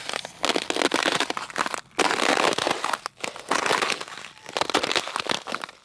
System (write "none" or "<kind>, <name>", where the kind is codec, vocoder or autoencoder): none